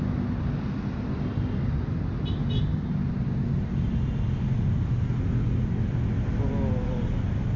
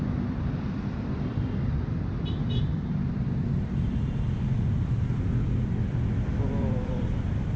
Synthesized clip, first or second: second